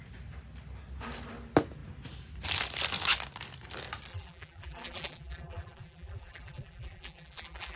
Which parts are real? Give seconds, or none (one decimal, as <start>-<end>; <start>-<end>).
0.0-4.1